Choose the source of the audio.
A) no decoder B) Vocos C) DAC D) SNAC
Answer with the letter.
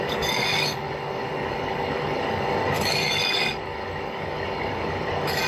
C